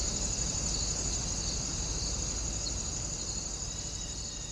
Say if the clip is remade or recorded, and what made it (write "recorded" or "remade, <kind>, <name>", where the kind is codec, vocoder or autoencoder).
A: recorded